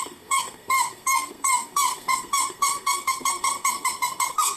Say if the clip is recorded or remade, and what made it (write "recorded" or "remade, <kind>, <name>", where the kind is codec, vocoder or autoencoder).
remade, codec, SNAC